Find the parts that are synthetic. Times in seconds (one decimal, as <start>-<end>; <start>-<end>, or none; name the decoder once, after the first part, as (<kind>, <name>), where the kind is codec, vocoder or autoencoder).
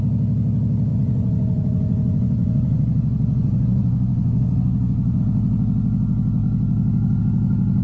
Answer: 0.9-5.2 (vocoder, Vocos)